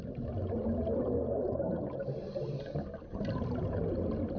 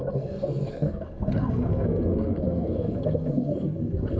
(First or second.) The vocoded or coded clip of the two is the second